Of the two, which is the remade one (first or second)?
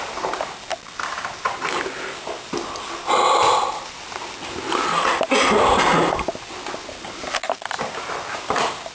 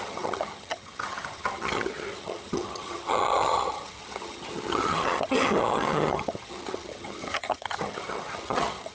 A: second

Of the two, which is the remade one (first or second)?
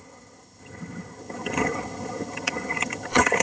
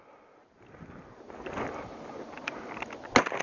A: first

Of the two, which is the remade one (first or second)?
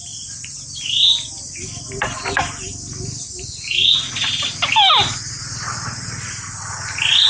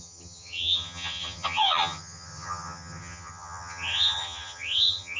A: second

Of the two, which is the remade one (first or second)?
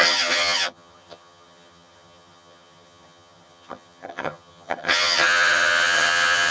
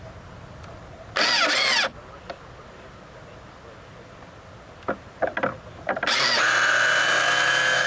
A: first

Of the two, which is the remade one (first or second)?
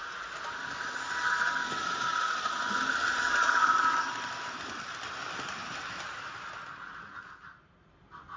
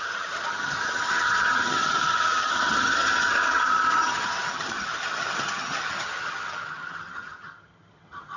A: second